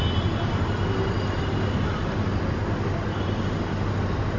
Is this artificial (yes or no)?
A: no